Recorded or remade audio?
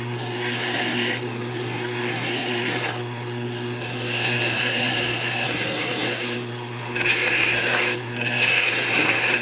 remade